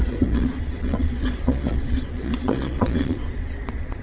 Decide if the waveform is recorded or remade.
remade